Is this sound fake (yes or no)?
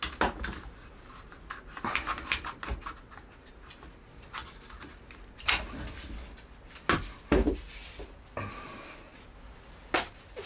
no